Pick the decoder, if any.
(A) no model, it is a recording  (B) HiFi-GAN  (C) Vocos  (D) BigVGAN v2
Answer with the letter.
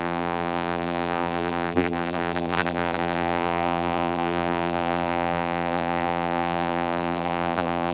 D